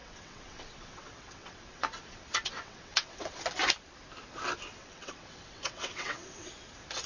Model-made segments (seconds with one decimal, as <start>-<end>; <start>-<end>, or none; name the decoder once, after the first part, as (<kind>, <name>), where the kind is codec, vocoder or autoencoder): 0.0-3.4 (vocoder, WaveNeXt); 4.8-6.5